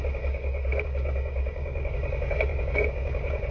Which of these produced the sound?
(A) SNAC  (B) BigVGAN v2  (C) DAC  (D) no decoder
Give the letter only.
C